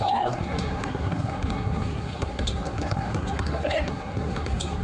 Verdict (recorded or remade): remade